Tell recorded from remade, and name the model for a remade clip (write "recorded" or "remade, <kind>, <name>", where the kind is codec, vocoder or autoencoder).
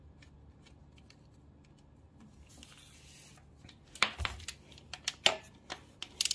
recorded